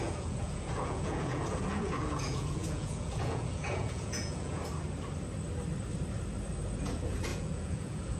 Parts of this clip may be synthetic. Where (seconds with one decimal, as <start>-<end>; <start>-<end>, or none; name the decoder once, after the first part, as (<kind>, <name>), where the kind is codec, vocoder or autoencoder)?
0.0-4.6 (vocoder, Vocos); 6.8-8.2